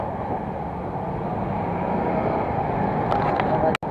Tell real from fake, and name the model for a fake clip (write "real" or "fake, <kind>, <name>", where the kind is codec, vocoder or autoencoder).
real